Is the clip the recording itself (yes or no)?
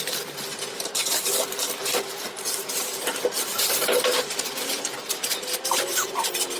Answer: no